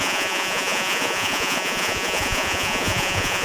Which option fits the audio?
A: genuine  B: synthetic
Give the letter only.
B